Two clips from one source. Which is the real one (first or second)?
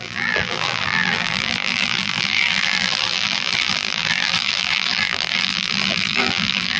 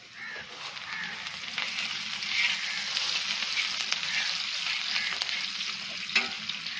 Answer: second